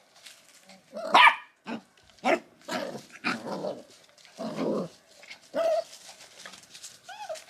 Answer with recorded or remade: recorded